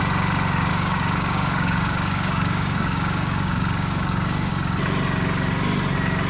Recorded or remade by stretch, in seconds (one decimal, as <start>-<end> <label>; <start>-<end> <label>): 0.0-0.7 recorded; 0.7-4.5 remade; 4.5-6.3 recorded

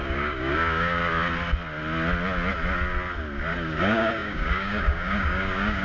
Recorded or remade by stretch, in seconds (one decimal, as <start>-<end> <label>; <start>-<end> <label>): 0.0-1.0 remade; 1.0-3.8 recorded; 3.8-5.8 remade

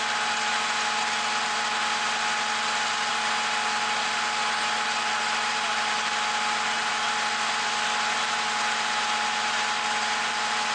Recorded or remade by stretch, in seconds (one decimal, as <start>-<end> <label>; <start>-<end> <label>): 0.0-10.7 recorded